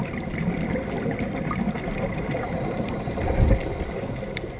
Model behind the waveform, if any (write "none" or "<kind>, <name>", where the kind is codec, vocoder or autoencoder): none